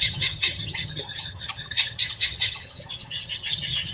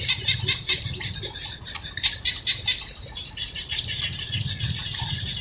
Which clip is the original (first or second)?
second